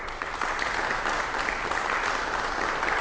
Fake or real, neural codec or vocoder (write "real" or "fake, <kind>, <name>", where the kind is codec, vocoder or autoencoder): real